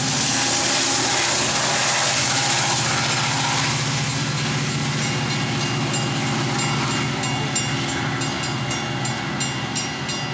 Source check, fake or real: real